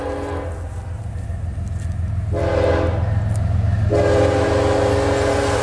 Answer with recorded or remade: recorded